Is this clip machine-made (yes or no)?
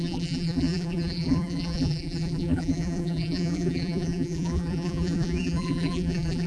yes